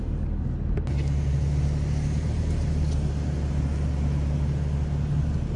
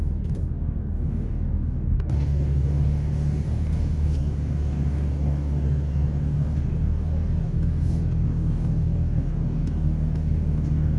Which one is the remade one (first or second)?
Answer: second